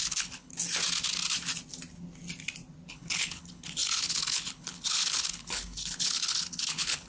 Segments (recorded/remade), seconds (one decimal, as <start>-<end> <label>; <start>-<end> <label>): 0.0-0.5 remade; 0.5-2.9 recorded; 2.9-7.1 remade